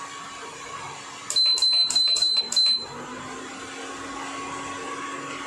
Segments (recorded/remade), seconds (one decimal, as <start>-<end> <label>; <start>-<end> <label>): 0.0-1.8 recorded; 1.8-2.4 remade; 2.4-5.5 recorded